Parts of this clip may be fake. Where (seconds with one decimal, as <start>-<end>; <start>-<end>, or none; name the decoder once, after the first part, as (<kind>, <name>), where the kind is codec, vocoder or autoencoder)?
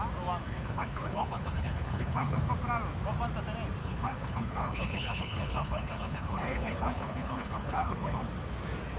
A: 0.4-2.4 (codec, HILCodec); 3.8-8.2